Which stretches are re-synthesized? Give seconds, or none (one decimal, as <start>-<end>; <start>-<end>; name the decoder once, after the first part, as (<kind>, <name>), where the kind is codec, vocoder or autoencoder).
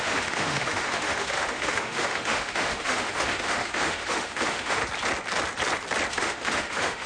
0.0-4.8 (autoencoder, DAC-VAE); 6.1-7.1